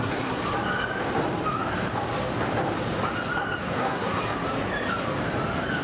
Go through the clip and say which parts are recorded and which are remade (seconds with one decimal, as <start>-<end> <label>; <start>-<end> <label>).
0.0-0.4 remade; 0.4-3.6 recorded; 3.6-4.2 remade; 4.2-5.8 recorded